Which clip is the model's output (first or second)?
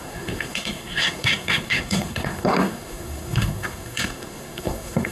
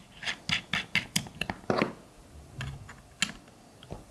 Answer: first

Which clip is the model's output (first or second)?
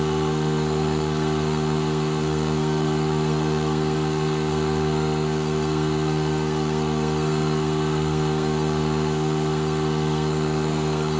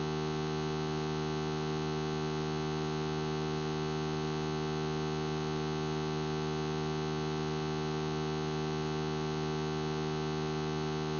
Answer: first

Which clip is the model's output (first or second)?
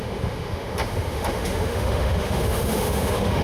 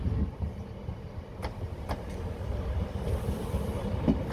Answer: first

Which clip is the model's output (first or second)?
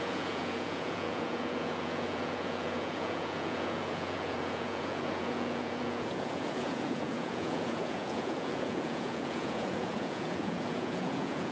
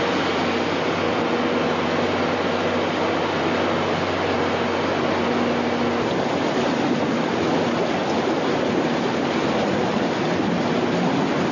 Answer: first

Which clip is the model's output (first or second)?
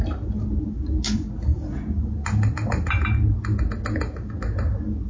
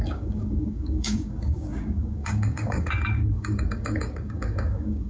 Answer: second